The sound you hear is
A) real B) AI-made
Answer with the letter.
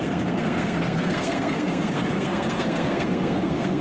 B